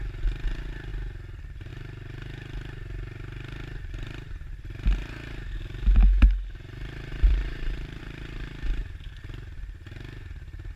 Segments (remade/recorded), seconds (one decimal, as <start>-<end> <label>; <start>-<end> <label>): 0.0-7.1 recorded; 7.1-8.0 remade; 8.0-10.8 recorded